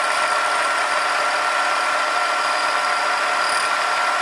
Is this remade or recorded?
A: recorded